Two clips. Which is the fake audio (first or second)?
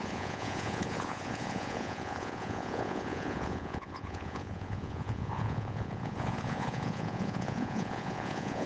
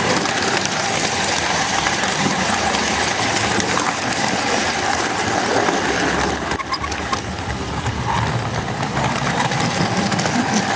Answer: first